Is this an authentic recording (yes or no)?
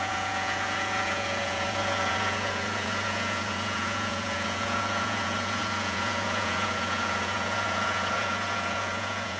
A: no